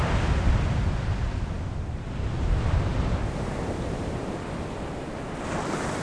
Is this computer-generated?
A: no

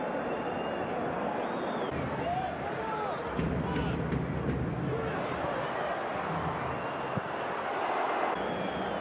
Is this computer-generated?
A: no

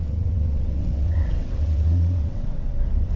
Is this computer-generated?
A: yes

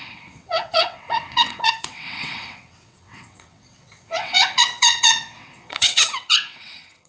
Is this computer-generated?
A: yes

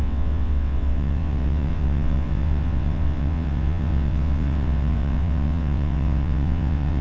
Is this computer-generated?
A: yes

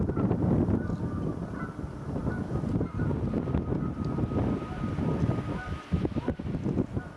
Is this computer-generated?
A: no